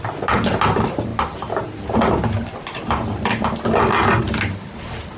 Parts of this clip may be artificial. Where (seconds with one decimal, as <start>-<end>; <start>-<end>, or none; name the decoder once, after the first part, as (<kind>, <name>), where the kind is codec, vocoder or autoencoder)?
none